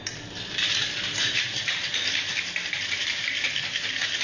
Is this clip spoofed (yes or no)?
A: no